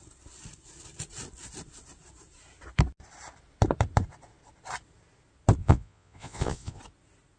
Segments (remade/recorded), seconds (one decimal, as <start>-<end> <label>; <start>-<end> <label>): 0.0-5.6 recorded; 5.6-6.8 remade; 6.8-7.4 recorded